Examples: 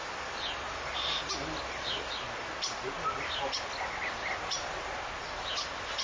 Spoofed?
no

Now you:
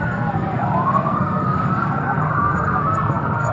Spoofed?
yes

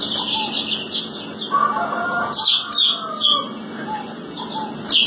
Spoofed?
no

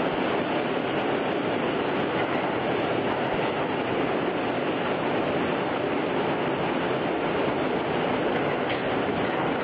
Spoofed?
no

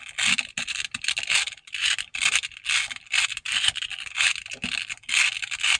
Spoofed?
no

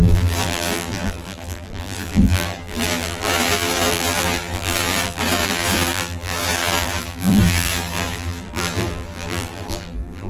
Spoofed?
yes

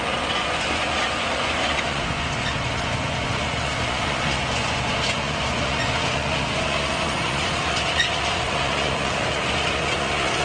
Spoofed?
yes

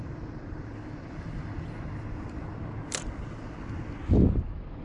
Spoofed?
no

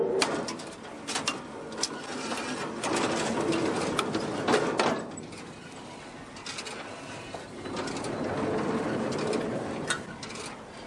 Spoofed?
no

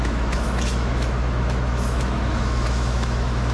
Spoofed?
yes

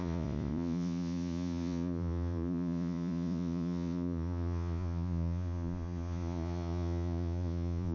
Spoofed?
yes